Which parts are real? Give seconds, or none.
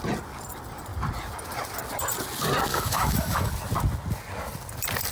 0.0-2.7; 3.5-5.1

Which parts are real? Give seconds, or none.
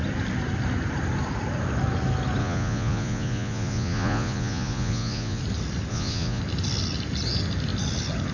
0.0-2.4; 5.4-5.9; 6.4-8.3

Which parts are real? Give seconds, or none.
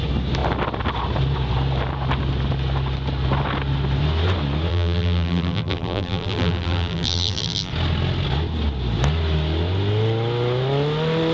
0.0-4.7; 7.7-11.3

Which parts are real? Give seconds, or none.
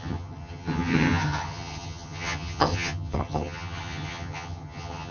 none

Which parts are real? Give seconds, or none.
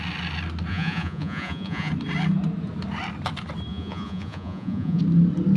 0.0-0.7; 1.9-3.7; 5.0-5.6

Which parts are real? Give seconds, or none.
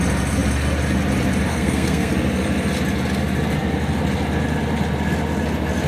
0.0-1.5; 2.1-5.9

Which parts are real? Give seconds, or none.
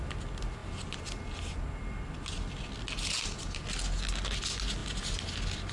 0.0-0.6; 2.6-5.7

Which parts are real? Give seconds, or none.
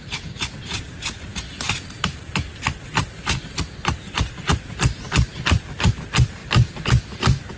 0.0-7.6